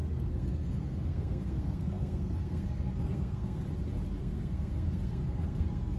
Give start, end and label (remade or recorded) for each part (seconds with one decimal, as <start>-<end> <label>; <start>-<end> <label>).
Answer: 0.0-3.6 remade; 3.6-4.2 recorded; 4.2-6.0 remade